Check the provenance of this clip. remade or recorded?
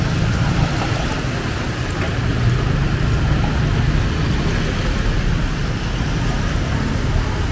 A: recorded